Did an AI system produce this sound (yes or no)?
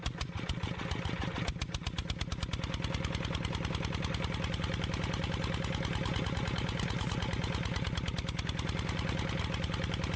no